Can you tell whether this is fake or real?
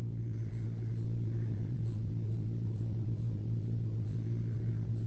fake